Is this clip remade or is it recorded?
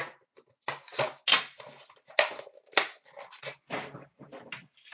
recorded